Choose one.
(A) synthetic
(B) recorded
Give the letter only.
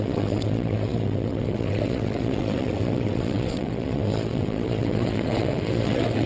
A